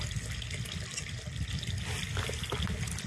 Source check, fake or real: real